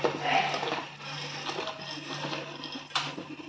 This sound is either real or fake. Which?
real